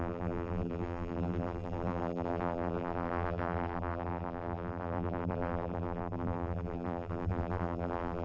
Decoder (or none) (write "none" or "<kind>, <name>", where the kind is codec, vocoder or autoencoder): vocoder, BigVGAN v2